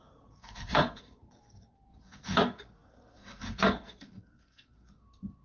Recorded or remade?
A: remade